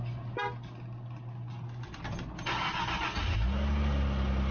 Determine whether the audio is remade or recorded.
recorded